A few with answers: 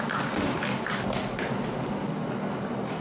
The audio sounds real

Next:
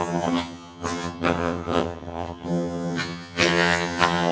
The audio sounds fake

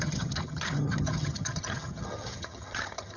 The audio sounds fake